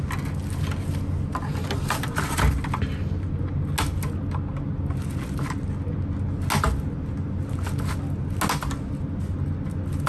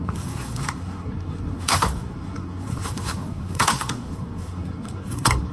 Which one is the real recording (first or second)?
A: first